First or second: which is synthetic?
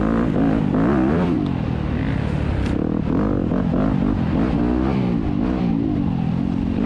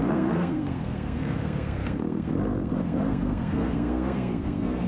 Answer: second